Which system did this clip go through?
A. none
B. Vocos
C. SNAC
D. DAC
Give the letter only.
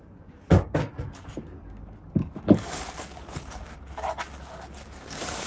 D